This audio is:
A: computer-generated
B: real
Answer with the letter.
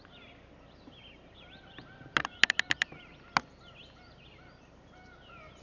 B